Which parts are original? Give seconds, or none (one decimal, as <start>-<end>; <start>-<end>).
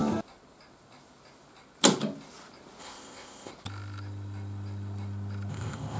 0.0-2.8; 3.5-5.5